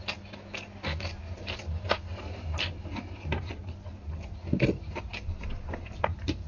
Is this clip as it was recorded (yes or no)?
yes